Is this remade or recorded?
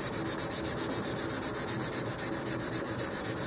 recorded